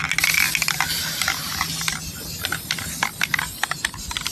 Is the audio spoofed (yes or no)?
no